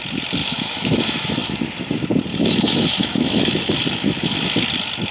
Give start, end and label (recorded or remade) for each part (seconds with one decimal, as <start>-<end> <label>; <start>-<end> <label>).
0.0-0.4 recorded; 0.4-1.3 remade; 1.3-2.3 recorded; 2.3-3.7 remade; 3.7-5.1 recorded

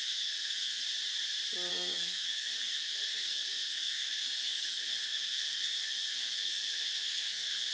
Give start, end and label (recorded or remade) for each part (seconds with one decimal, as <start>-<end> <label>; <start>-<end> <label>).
0.0-0.8 remade; 0.8-1.7 recorded; 1.7-7.7 remade